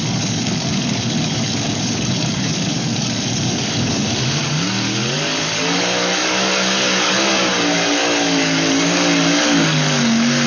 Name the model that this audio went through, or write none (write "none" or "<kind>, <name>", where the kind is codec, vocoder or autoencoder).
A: codec, DAC